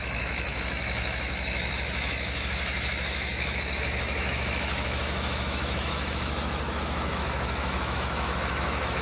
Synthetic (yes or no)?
yes